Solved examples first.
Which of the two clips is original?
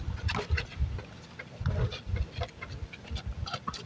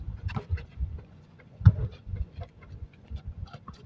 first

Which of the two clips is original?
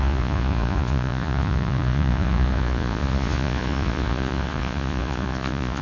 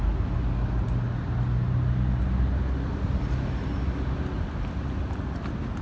second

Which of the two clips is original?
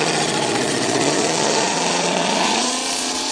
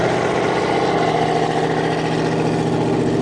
second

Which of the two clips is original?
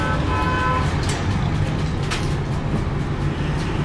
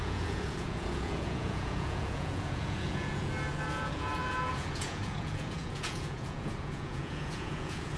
first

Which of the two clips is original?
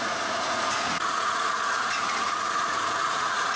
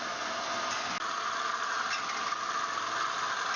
second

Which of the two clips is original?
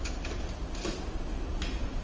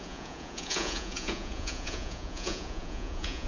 first